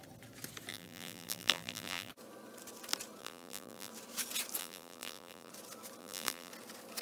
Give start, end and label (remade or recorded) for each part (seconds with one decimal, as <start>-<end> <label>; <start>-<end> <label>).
0.0-0.7 recorded; 0.7-2.1 remade; 2.1-3.2 recorded; 3.2-3.9 remade; 3.9-4.6 recorded; 4.6-5.5 remade; 5.5-6.0 recorded; 6.0-6.5 remade; 6.5-7.0 recorded

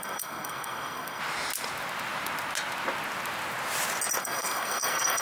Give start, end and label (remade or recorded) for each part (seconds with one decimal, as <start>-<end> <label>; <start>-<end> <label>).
0.0-1.2 remade; 1.2-4.2 recorded; 4.2-5.2 remade